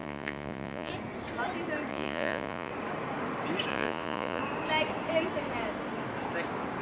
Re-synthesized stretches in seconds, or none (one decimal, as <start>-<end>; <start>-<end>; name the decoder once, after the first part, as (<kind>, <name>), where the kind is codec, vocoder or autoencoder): 0.0-0.9 (vocoder, Vocos); 1.9-2.7; 3.7-4.4